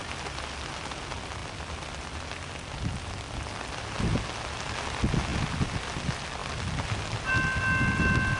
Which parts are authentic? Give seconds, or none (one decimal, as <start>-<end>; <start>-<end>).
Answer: 0.0-6.4; 7.3-8.4